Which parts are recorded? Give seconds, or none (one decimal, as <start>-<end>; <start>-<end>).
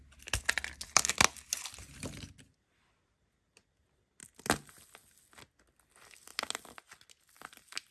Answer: 0.0-7.9